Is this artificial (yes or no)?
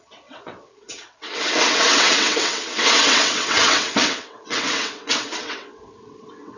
yes